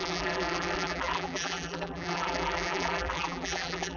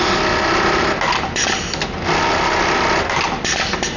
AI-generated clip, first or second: first